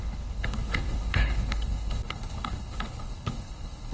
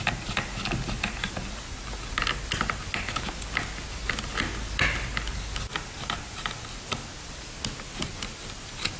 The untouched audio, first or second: second